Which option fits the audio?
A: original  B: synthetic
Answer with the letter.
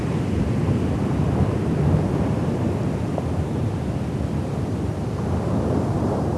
A